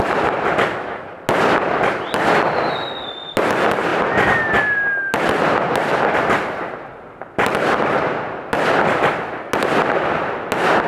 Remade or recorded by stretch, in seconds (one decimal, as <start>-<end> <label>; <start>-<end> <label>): 0.0-10.9 recorded